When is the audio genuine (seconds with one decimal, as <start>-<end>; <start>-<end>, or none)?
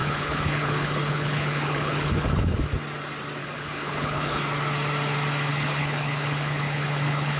2.6-3.4; 4.4-5.5